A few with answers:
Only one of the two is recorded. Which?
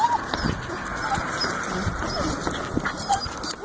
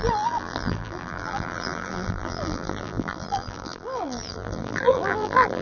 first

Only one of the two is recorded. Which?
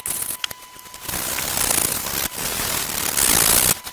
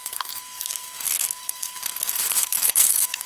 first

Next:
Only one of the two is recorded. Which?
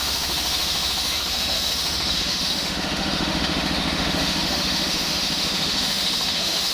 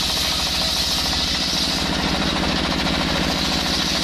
second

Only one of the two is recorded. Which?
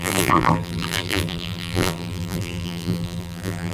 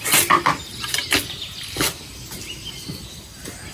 second